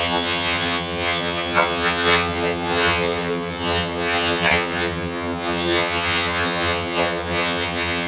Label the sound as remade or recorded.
remade